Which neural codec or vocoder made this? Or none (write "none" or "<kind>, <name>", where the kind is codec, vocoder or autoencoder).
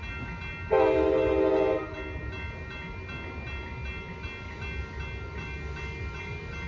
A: none